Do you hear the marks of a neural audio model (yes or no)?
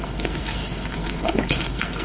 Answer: yes